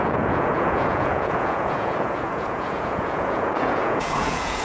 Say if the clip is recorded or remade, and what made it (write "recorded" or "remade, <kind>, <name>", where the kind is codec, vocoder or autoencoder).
remade, vocoder, Vocos